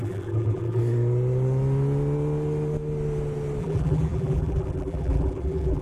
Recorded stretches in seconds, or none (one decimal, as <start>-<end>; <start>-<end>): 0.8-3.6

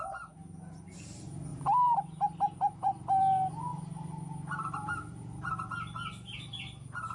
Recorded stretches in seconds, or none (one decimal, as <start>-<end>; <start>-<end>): 0.0-1.5; 3.2-3.7; 5.5-7.1

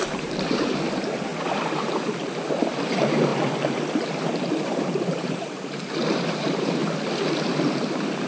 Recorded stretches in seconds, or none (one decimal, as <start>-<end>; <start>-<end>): 1.3-2.2; 3.3-4.5; 6.8-7.7